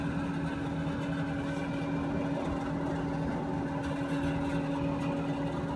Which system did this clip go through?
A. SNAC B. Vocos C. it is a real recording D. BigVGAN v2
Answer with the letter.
C